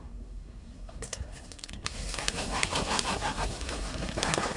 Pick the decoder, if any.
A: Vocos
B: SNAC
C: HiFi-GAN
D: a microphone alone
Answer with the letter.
B